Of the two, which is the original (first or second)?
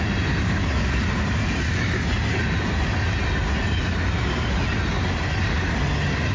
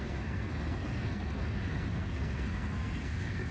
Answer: first